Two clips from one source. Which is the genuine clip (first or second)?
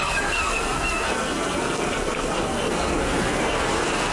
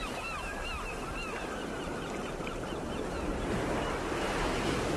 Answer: second